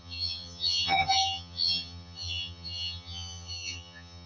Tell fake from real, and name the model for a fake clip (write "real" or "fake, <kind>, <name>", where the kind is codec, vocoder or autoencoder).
fake, vocoder, HiFi-GAN